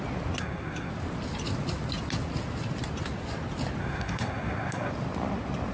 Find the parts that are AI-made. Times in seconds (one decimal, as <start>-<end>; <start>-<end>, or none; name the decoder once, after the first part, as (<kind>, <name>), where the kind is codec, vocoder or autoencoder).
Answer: 0.4-0.9 (codec, SNAC); 3.8-4.9